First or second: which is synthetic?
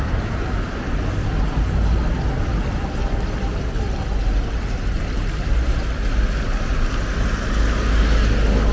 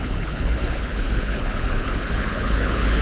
second